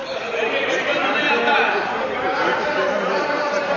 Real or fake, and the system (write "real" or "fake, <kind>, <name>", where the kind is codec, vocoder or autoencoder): fake, vocoder, BigVGAN v2